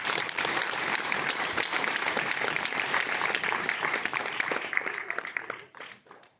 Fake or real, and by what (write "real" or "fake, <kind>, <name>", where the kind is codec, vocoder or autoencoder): fake, vocoder, BigVGAN v2